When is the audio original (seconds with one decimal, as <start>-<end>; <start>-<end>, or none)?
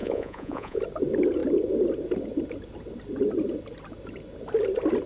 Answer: 0.8-5.1